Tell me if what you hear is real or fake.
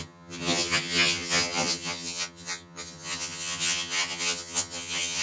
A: fake